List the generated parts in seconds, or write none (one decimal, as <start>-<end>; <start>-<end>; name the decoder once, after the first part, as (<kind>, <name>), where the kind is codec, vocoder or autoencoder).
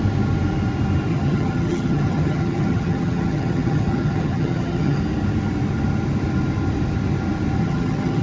1.1-5.0 (vocoder, HiFi-GAN); 7.6-8.2